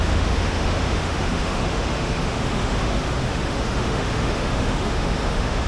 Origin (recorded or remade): remade